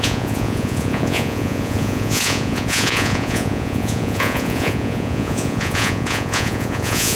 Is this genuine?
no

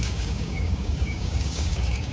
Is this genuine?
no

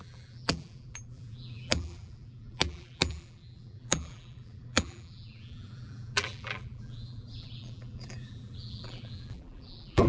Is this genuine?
no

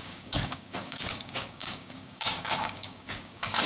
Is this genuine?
no